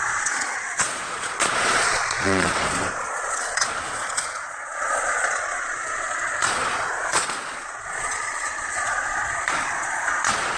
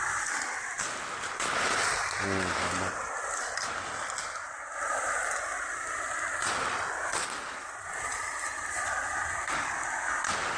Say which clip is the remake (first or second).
first